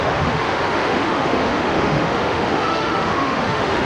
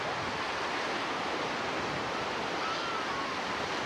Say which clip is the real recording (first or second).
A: second